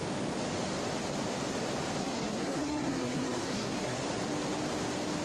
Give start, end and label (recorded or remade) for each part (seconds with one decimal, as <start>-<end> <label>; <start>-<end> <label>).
0.0-2.0 recorded; 2.0-4.0 remade; 4.0-5.2 recorded